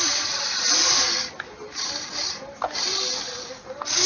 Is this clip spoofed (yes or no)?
no